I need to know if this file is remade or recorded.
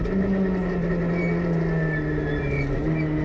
recorded